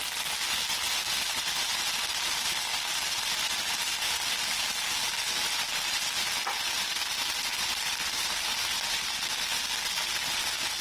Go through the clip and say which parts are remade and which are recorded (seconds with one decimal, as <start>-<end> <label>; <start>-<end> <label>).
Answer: 0.0-10.8 recorded